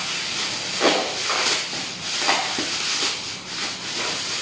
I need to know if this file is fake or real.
real